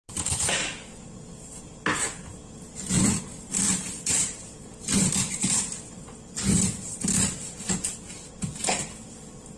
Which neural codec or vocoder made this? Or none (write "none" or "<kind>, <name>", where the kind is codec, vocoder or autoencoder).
none